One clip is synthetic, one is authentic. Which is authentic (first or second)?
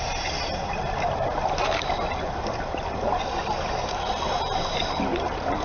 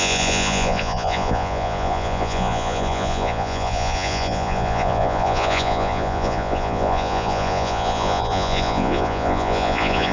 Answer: first